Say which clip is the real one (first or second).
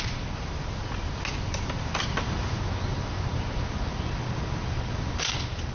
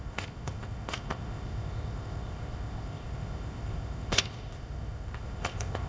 first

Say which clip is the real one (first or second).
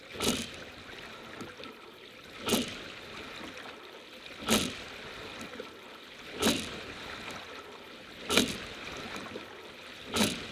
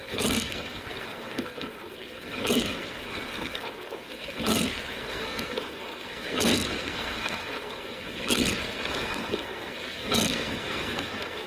first